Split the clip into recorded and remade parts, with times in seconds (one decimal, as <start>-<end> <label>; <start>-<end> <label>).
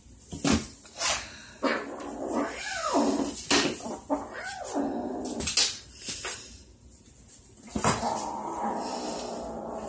0.0-9.9 recorded